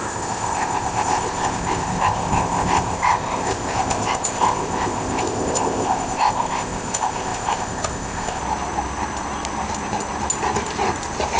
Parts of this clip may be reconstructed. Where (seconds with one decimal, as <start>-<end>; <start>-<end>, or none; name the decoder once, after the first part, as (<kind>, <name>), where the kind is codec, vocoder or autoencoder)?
0.0-8.4 (codec, ZipCodec)